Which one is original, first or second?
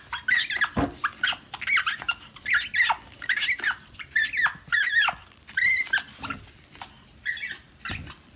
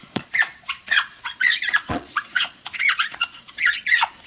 first